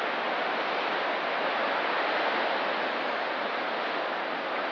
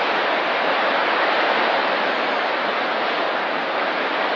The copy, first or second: second